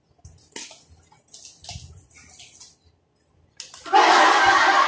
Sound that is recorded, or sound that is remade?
recorded